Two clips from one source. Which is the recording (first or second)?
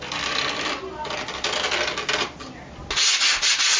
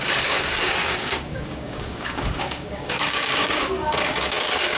first